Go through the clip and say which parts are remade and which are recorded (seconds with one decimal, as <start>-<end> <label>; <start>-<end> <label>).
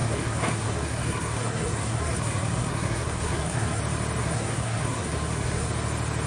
0.0-3.8 remade; 3.8-4.2 recorded; 4.2-5.7 remade; 5.7-6.3 recorded